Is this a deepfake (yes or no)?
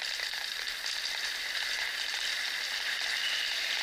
no